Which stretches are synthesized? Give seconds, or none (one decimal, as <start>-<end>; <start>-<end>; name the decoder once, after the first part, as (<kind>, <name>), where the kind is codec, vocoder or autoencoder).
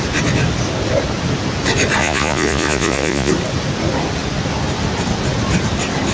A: 2.0-3.3 (vocoder, Vocos)